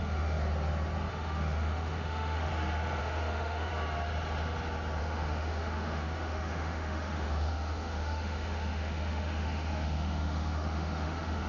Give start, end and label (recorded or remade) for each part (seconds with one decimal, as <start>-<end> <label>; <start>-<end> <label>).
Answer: 0.0-0.4 remade; 0.4-1.1 recorded; 1.1-2.5 remade; 2.5-3.0 recorded; 3.0-3.7 remade; 3.7-5.0 recorded; 5.0-11.5 remade